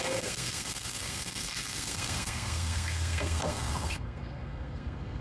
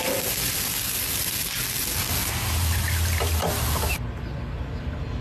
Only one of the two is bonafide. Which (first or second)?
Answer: second